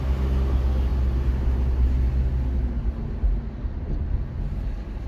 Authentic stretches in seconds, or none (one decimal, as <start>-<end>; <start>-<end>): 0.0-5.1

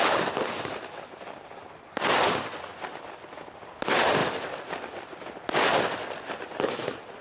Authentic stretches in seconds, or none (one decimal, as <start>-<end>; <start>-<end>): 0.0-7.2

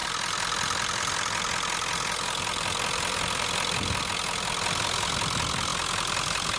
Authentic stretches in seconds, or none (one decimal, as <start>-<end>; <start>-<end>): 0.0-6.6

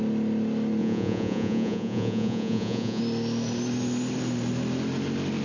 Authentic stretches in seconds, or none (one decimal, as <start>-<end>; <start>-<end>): 0.0-0.8; 3.0-5.4

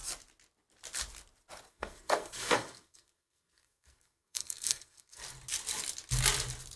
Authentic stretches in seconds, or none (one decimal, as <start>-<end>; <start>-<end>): 0.0-1.7; 5.2-6.8

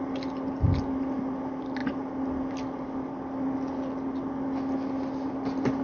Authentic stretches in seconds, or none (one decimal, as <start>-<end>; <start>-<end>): 0.0-5.8